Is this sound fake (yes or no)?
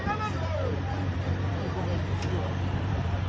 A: yes